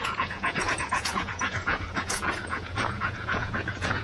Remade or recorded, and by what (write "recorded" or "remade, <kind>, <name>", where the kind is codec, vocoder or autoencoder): remade, vocoder, Vocos